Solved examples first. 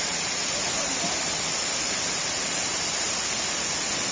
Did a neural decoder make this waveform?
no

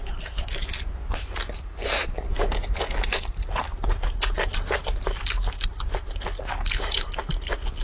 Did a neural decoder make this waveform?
no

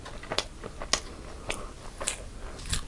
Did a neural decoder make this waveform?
no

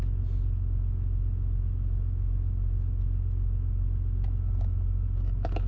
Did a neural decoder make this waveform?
no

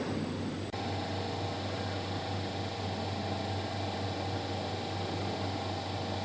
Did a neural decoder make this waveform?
no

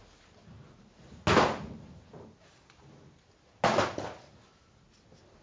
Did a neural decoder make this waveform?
no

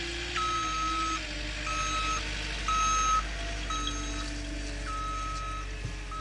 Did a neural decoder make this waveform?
no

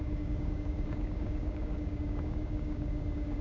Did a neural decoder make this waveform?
yes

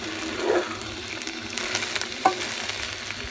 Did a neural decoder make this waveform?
no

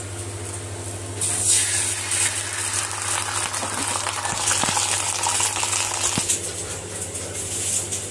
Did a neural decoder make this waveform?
no